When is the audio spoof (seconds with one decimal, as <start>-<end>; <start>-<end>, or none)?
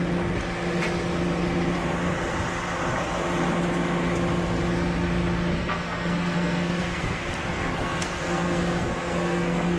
5.6-9.8